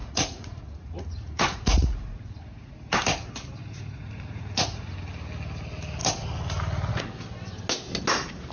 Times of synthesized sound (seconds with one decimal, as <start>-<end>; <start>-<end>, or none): 0.0-2.7; 3.6-4.9